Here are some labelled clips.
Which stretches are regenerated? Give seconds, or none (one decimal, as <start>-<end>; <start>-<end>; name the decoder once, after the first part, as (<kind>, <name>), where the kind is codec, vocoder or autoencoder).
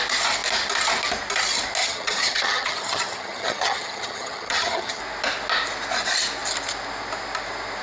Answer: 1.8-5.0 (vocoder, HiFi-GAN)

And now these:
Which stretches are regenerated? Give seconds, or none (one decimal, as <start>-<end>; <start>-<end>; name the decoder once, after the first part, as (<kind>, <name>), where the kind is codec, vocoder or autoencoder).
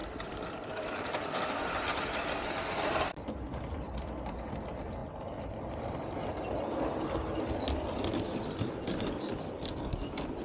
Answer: none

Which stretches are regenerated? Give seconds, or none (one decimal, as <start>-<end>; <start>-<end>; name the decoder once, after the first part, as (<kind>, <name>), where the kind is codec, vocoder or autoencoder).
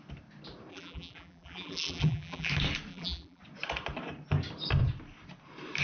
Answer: 0.7-2.5 (vocoder, BigVGAN v2); 2.9-3.4